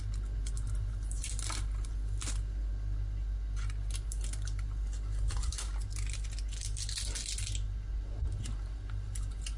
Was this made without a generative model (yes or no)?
yes